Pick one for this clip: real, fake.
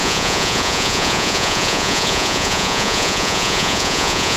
fake